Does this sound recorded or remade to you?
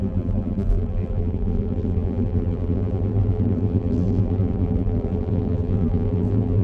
remade